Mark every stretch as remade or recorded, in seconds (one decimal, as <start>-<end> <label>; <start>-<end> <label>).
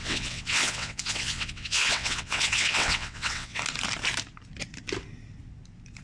0.0-3.6 remade; 3.6-6.0 recorded